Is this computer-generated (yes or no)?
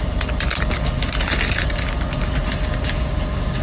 no